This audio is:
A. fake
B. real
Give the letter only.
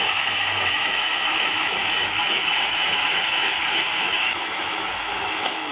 A